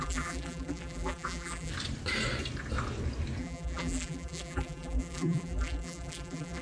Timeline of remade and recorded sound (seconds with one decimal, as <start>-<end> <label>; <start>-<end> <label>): 0.0-1.7 remade; 1.7-3.4 recorded; 3.4-6.6 remade